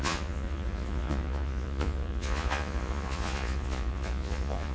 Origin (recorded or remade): remade